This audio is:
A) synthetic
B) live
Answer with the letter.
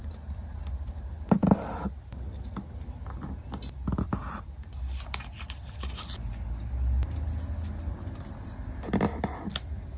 B